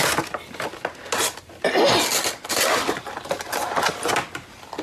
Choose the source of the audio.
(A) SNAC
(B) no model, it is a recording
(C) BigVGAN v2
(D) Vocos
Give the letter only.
B